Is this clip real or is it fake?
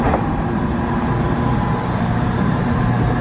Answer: fake